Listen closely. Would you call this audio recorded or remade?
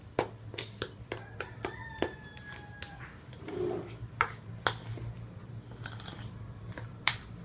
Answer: recorded